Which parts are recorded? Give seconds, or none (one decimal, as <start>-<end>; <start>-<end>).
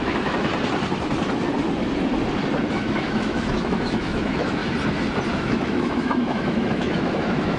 0.5-2.7; 4.6-5.3